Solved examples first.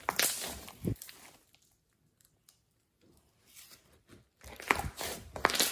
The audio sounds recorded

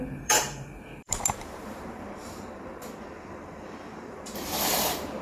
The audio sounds remade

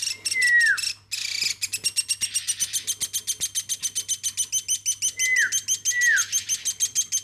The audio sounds recorded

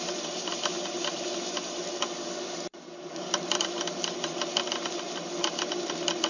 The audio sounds remade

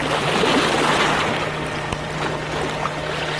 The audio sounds recorded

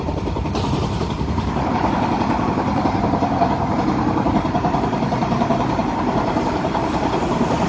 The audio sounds remade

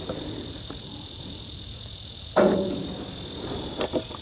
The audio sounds recorded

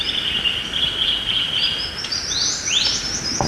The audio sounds recorded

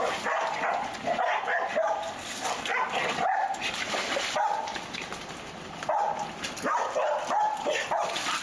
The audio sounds recorded